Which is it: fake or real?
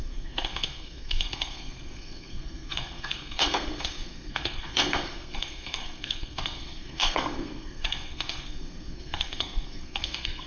fake